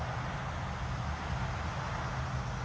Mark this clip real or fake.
real